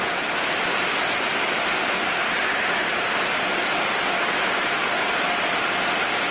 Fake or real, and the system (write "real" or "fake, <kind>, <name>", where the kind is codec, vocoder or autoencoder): real